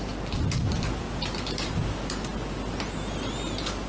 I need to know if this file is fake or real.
real